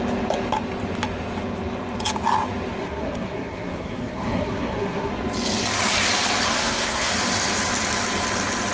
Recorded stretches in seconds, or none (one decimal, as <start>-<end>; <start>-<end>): 0.0-2.8; 5.1-6.5; 7.1-8.7